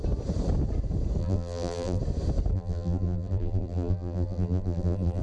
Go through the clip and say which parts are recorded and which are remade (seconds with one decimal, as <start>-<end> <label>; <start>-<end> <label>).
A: 0.0-1.2 recorded; 1.2-2.0 remade; 2.0-2.5 recorded; 2.5-5.2 remade